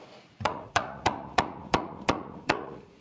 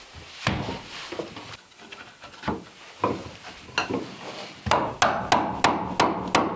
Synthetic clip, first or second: first